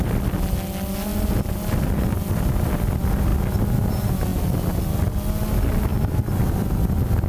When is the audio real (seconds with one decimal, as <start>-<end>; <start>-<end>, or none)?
0.0-7.3